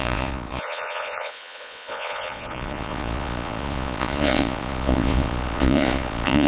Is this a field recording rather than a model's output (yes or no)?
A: no